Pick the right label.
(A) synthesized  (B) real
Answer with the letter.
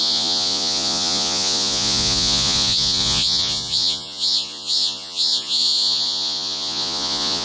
A